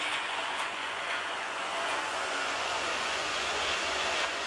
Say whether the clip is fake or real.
fake